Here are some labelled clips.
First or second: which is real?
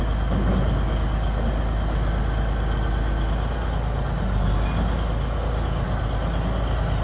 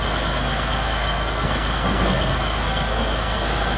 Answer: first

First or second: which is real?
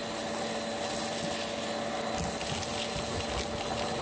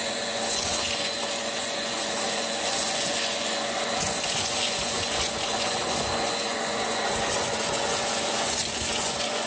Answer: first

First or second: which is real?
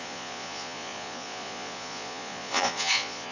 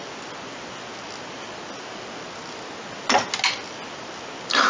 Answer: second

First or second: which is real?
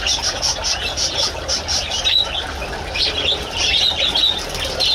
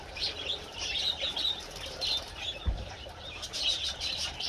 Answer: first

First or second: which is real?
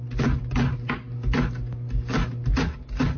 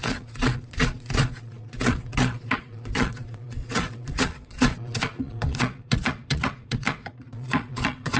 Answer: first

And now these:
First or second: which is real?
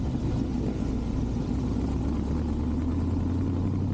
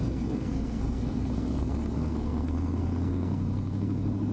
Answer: first